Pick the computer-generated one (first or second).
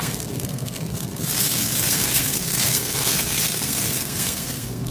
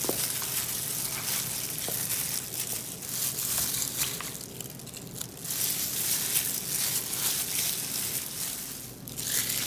first